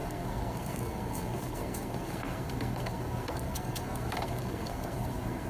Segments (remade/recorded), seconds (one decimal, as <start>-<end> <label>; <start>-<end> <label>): 0.0-5.5 remade